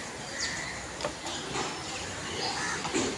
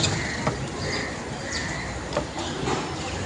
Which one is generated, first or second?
second